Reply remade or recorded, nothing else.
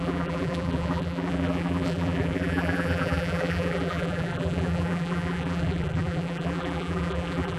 remade